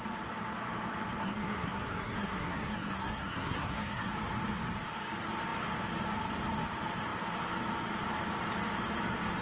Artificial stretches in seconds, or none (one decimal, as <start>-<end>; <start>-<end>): 1.2-4.1

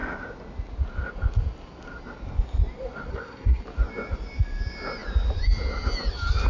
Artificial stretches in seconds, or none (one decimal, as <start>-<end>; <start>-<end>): 3.1-3.6

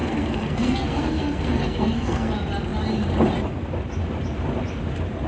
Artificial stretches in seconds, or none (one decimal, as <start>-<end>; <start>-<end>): 0.0-2.3

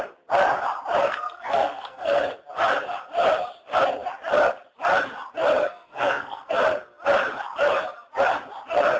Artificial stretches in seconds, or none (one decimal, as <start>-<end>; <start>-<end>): 1.0-2.2; 5.6-6.5

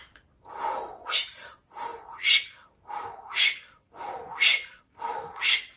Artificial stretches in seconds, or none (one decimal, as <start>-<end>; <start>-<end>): none